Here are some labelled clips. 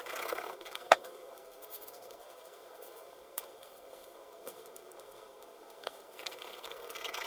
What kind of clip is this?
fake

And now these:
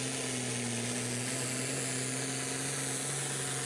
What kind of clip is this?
real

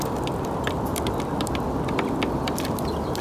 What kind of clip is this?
real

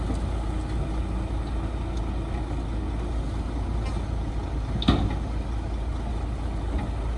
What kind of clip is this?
real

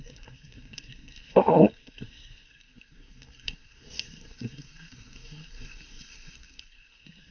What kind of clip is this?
fake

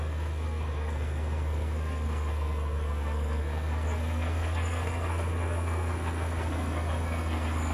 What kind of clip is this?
fake